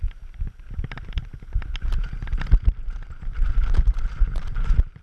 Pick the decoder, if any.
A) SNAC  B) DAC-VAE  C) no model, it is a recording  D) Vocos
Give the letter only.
C